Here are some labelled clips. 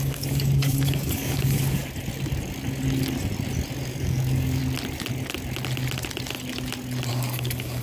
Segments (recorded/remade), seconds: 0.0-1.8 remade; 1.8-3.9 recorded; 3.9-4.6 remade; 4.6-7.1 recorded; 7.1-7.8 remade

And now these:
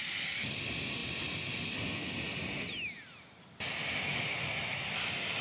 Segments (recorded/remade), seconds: 0.0-5.4 recorded

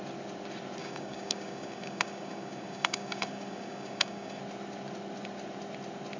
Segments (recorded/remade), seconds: 0.0-0.8 recorded; 0.8-4.4 remade; 4.4-6.2 recorded

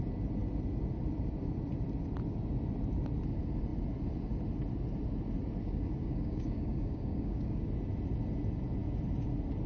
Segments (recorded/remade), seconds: 0.0-5.6 recorded; 5.6-7.7 remade; 7.7-9.7 recorded